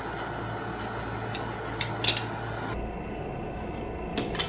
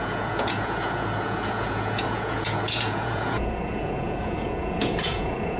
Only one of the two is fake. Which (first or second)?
second